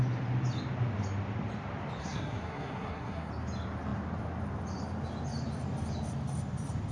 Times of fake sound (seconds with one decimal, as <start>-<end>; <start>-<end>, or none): 2.0-3.3